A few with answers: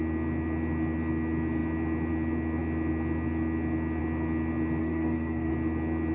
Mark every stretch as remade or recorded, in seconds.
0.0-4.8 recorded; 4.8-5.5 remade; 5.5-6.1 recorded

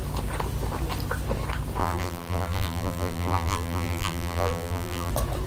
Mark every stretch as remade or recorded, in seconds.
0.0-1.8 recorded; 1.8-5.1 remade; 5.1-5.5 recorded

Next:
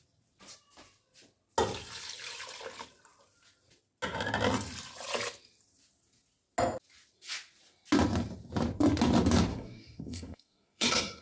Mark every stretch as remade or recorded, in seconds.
0.0-9.5 recorded; 9.5-11.2 remade

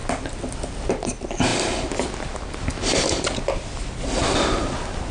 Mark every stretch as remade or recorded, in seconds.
0.0-5.1 recorded

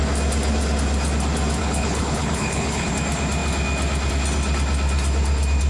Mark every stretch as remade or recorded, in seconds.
0.0-1.6 recorded; 1.6-2.9 remade; 2.9-5.7 recorded

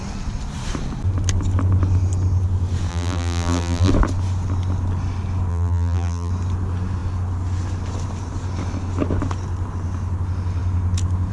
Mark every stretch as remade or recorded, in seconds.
0.0-2.9 recorded; 2.9-3.9 remade; 3.9-5.5 recorded; 5.5-6.3 remade; 6.3-11.3 recorded

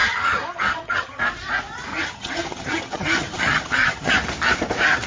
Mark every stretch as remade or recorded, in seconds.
0.0-1.2 remade; 1.2-1.9 recorded; 1.9-4.1 remade; 4.1-5.1 recorded

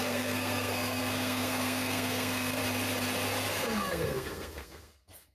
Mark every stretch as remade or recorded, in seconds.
0.0-2.6 remade; 2.6-3.5 recorded; 3.5-5.3 remade